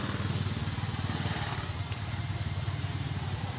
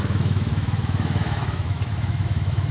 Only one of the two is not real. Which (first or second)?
second